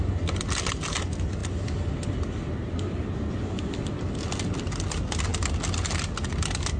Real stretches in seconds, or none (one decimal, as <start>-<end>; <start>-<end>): 0.0-6.8